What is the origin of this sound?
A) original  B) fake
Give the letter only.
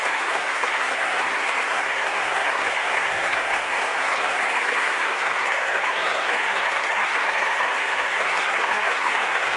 B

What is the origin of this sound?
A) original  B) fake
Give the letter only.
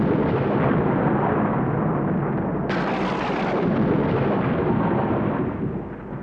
A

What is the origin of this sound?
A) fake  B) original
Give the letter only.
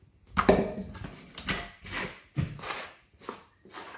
B